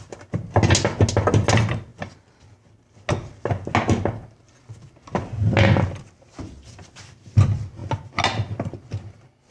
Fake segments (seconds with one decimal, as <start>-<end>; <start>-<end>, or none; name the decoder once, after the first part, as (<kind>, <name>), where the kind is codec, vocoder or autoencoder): none

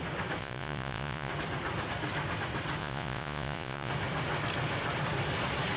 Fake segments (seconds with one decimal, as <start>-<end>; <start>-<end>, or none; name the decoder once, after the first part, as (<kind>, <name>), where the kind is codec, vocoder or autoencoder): 0.4-1.3 (vocoder, Vocos); 2.8-3.9